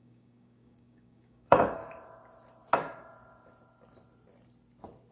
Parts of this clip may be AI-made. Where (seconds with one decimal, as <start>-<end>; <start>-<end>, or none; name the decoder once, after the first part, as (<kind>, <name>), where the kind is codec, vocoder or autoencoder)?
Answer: 0.0-1.8 (codec, DAC)